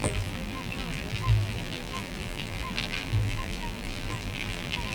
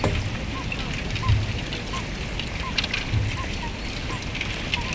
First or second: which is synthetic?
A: first